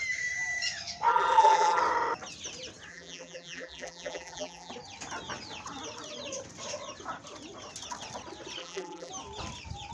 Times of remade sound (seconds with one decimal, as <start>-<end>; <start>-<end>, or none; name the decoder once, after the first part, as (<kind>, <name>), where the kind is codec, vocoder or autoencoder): 1.1-1.8 (vocoder, BigVGAN v2); 2.9-4.7; 8.6-9.1